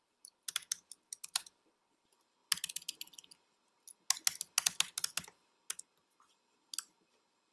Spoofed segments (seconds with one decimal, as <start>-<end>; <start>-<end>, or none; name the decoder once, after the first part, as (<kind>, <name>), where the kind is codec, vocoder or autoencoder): none